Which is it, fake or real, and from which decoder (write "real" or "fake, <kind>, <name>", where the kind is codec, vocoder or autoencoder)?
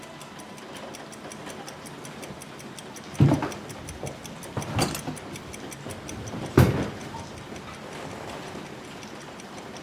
real